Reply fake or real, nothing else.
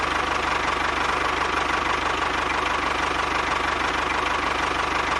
real